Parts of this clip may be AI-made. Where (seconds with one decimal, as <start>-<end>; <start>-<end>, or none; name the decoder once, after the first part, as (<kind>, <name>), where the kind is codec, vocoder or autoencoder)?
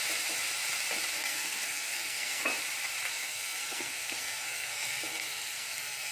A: 1.2-2.4 (codec, SNAC); 3.1-6.1